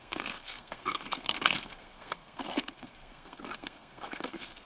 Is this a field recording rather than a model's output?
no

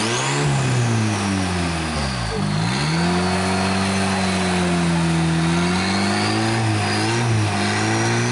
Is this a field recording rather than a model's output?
yes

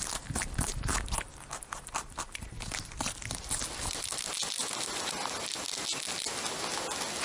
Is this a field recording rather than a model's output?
yes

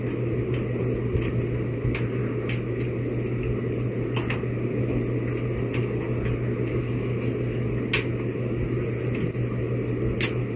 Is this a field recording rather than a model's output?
yes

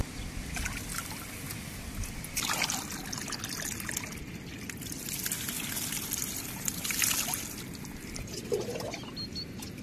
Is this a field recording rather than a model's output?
yes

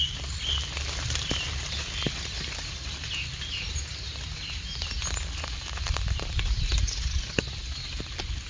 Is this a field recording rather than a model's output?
yes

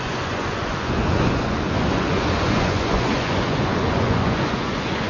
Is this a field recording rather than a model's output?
no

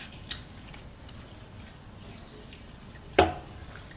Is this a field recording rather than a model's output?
yes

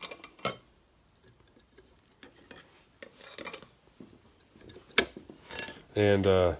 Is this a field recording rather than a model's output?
yes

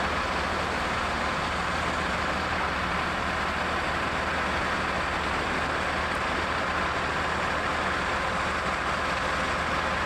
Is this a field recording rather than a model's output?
yes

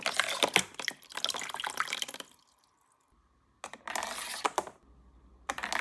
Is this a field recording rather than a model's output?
yes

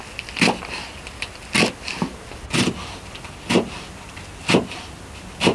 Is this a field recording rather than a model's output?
yes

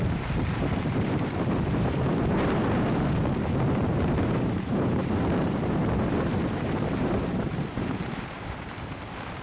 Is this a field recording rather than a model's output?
no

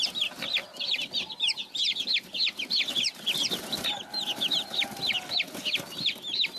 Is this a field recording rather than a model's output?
yes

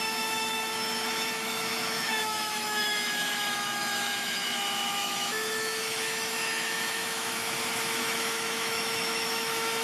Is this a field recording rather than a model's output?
no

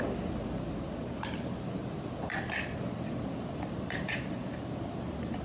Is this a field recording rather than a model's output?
yes